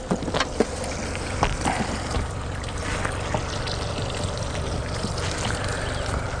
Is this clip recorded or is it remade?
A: recorded